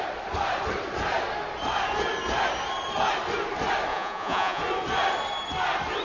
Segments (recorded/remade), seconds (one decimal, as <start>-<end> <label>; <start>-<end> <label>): 0.0-3.9 recorded; 3.9-4.6 remade; 4.6-6.0 recorded